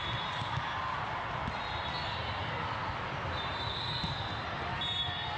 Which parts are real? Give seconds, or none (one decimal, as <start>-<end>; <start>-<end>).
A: 0.0-5.4